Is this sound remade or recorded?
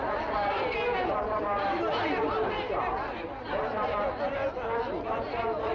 recorded